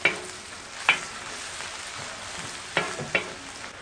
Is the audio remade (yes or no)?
no